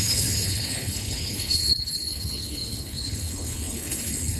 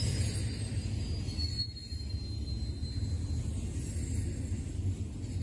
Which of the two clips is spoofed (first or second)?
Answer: first